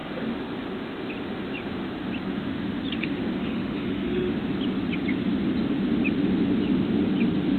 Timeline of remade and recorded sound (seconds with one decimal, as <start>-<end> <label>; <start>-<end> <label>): 0.0-3.4 recorded; 3.4-4.3 remade; 4.3-7.6 recorded